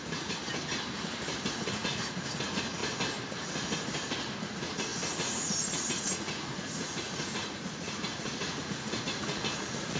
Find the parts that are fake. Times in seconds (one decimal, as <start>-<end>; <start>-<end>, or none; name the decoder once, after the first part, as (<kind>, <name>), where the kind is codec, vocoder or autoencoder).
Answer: 0.0-0.4 (vocoder, Vocos); 1.5-2.8; 4.5-10.0